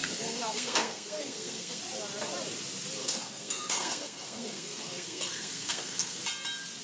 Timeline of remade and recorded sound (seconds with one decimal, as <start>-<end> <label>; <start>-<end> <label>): 0.0-1.8 remade; 1.8-3.0 recorded; 3.0-6.2 remade; 6.2-6.8 recorded